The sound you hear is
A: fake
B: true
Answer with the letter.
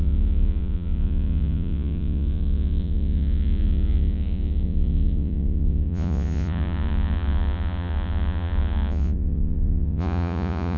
A